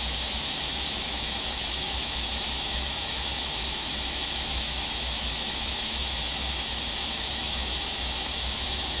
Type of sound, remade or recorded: remade